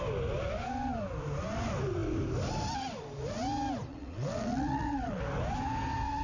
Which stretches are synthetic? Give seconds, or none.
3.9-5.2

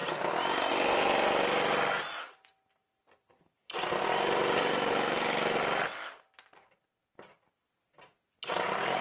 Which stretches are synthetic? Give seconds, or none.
none